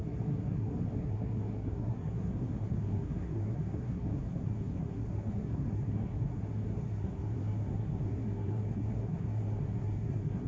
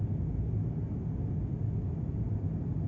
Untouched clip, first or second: second